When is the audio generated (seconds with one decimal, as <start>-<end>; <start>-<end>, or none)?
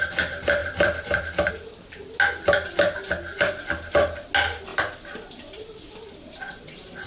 0.6-1.5; 4.7-5.8